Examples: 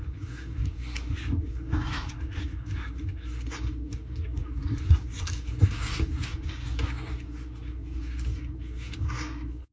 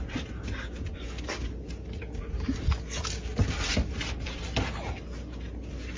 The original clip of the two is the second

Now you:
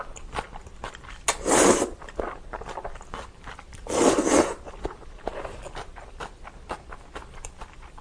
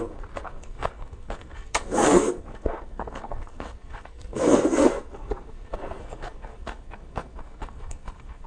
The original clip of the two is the first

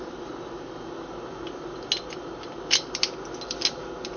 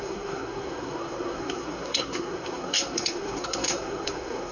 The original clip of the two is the first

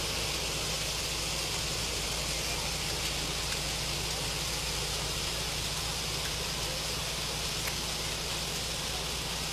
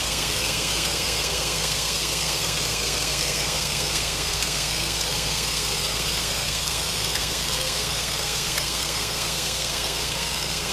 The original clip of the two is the first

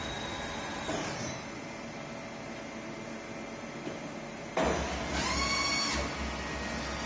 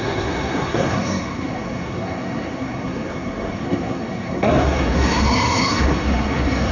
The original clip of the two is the first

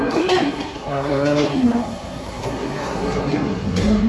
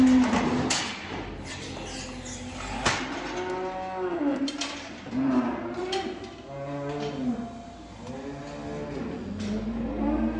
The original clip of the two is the second